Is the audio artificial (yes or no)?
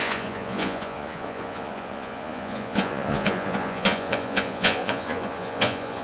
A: yes